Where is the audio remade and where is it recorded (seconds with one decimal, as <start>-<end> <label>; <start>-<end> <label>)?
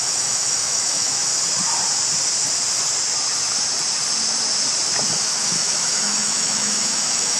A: 0.0-1.2 remade; 1.2-5.2 recorded; 5.2-7.4 remade